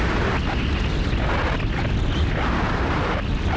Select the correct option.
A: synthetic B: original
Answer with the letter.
B